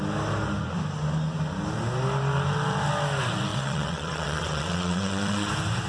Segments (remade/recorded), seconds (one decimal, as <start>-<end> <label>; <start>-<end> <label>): 0.0-3.5 recorded; 3.5-5.5 remade; 5.5-5.9 recorded